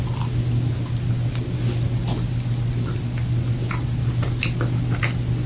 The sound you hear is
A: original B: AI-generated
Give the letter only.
A